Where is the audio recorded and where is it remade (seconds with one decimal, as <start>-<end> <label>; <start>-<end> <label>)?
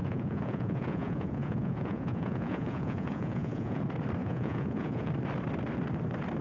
0.0-3.8 remade; 3.8-4.2 recorded; 4.2-5.1 remade; 5.1-6.4 recorded